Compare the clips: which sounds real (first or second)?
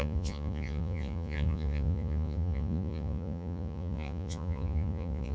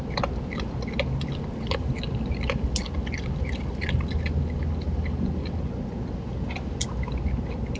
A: second